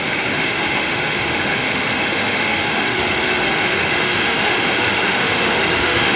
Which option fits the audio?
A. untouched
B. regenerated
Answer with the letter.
B